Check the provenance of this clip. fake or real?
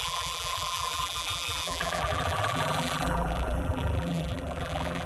fake